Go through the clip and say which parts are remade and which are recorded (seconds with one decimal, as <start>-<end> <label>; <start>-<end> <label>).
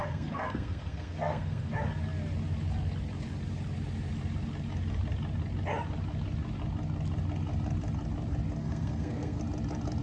0.0-1.7 remade; 1.7-8.6 recorded; 8.6-9.4 remade; 9.4-10.0 recorded